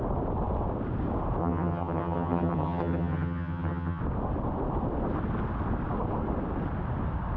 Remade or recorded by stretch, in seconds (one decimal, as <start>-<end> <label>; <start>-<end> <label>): 0.0-1.4 recorded; 1.4-4.0 remade; 4.0-7.4 recorded